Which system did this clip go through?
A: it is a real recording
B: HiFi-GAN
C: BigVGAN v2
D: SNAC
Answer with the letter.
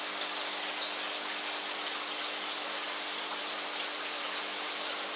A